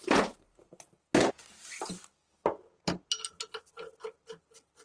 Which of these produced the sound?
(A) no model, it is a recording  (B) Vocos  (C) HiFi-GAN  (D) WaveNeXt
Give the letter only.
A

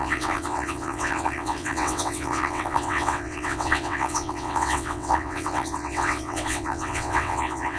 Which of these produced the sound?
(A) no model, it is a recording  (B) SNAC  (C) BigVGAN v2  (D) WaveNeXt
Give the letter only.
D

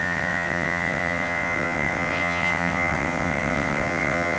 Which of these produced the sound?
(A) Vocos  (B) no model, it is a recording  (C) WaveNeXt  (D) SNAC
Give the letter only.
C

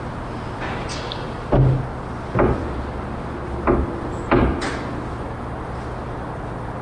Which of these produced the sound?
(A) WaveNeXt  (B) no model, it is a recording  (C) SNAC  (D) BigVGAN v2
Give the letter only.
B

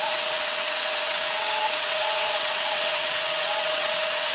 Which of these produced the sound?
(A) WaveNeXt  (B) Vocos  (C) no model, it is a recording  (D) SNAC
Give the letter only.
A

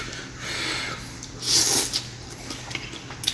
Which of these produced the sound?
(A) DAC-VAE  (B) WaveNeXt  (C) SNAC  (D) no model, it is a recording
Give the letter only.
D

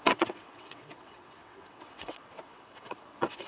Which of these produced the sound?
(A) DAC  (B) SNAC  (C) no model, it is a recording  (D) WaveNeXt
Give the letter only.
D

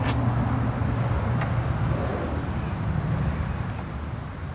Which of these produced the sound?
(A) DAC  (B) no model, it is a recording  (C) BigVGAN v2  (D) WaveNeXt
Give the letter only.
B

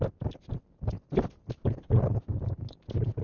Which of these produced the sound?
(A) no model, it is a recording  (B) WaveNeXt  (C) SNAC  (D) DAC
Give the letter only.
A